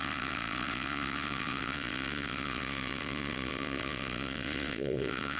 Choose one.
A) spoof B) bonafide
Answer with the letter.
A